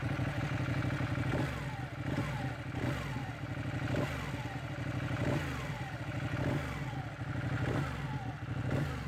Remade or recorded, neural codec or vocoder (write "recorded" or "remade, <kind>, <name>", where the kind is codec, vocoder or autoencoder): recorded